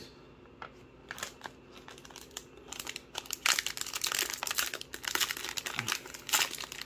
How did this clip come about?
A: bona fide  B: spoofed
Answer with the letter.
A